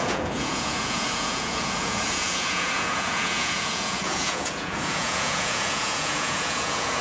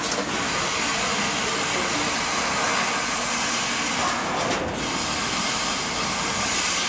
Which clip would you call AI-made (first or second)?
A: first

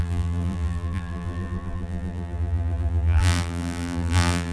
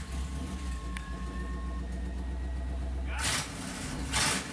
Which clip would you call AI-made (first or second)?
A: first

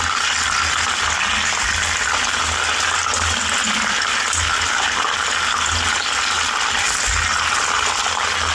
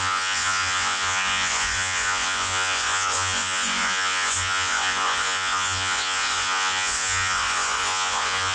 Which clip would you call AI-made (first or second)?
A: second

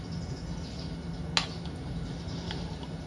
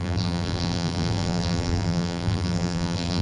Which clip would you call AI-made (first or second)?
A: second